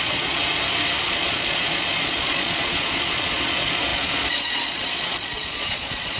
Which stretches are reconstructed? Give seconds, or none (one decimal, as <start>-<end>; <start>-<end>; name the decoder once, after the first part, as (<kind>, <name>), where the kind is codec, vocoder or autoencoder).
0.0-0.4 (vocoder, Vocos); 1.0-6.2